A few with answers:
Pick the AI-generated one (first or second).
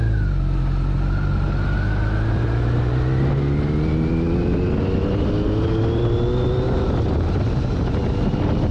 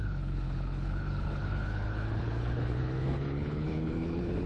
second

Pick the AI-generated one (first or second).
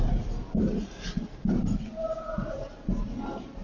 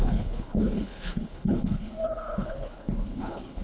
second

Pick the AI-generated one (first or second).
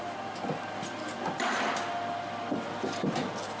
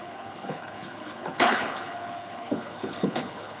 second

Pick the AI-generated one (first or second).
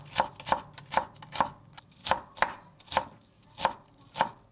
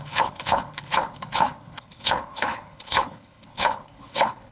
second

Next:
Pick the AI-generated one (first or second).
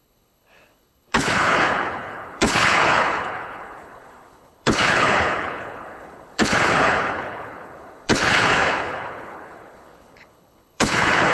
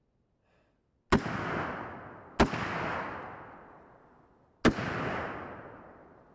first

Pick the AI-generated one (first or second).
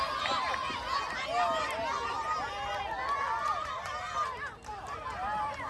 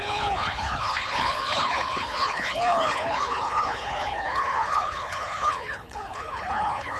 second